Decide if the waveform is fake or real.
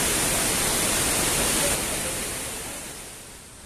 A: real